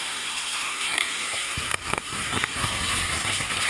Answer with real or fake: fake